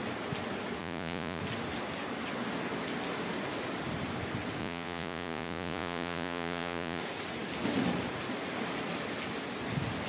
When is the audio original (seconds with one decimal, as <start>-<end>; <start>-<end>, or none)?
0.0-0.8; 1.4-4.6; 7.0-10.1